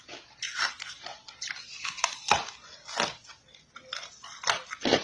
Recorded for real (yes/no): yes